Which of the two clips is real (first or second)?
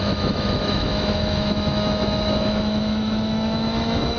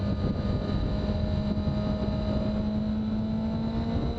second